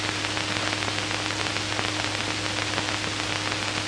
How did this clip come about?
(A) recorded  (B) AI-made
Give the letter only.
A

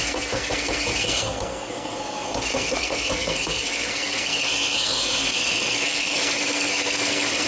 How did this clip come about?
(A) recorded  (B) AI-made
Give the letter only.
B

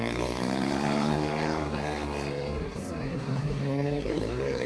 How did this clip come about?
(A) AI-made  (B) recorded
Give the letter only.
A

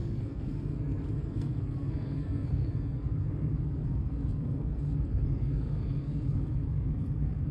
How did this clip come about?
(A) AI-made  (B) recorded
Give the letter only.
A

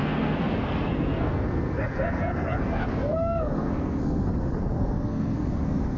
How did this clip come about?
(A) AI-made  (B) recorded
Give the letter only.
A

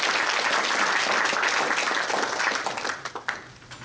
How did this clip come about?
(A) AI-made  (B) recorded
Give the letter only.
B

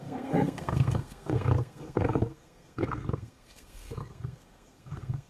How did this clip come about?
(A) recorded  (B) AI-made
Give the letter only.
B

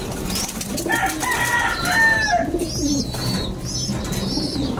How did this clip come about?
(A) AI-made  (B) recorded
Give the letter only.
B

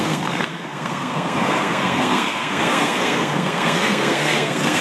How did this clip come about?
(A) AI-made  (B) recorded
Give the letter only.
A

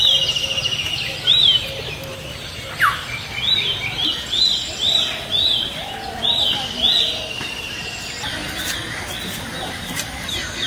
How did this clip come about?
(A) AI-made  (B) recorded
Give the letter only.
B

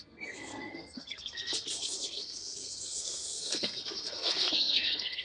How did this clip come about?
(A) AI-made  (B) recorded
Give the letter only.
A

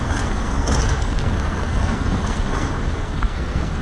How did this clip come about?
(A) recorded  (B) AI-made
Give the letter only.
B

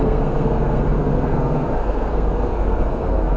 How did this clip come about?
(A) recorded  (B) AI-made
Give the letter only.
B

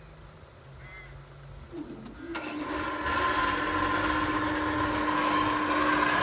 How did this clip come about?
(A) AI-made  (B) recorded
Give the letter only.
B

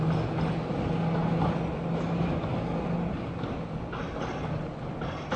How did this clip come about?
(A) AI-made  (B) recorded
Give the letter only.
B